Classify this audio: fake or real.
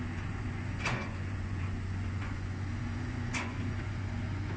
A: fake